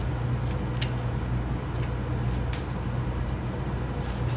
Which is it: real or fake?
real